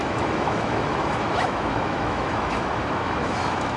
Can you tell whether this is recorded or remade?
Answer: remade